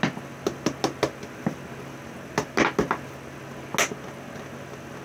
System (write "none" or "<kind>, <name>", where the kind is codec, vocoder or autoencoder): none